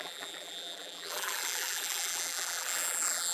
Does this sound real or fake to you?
fake